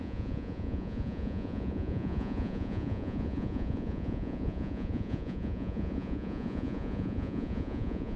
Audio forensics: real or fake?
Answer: fake